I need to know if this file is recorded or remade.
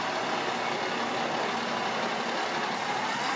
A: recorded